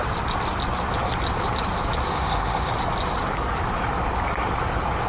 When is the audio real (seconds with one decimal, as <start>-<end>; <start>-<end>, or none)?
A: 0.0-2.1; 2.7-5.1